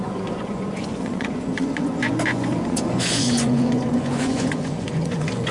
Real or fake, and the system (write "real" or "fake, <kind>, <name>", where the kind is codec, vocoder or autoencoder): fake, vocoder, Vocos